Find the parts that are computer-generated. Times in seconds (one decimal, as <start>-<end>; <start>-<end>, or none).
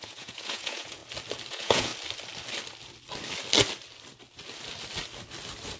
0.0-1.0; 1.5-1.9